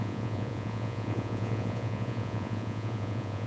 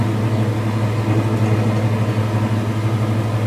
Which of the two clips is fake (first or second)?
first